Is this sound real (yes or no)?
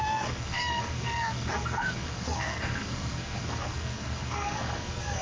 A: no